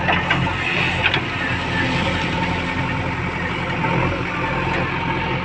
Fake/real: real